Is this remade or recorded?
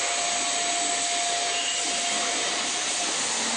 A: recorded